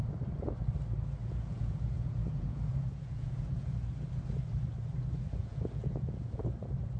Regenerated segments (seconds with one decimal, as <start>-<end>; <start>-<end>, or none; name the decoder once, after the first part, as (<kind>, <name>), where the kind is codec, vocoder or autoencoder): 1.2-3.7 (vocoder, Vocos); 5.4-6.4